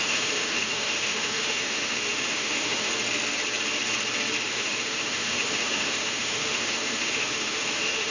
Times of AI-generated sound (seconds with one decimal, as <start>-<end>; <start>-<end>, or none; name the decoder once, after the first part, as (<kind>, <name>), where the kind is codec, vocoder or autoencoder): 0.0-2.9 (autoencoder, DAC-VAE); 4.5-8.1